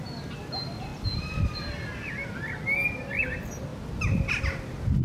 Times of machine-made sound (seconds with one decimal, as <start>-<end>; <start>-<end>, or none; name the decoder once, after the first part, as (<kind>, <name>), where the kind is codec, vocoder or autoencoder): none